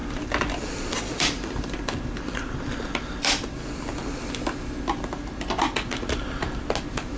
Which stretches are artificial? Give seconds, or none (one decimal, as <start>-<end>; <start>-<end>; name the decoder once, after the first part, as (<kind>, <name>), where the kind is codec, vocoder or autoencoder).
0.0-4.3 (vocoder, BigVGAN v2)

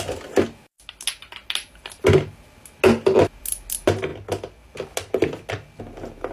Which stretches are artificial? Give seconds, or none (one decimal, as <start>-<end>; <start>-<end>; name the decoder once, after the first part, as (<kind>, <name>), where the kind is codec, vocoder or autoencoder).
none